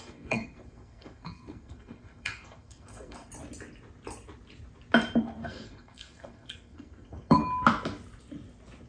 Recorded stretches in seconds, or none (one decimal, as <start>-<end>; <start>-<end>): 3.3-5.2; 7.4-8.9

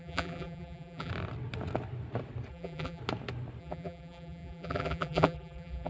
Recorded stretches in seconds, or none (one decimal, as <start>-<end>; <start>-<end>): 1.1-2.5; 3.0-3.6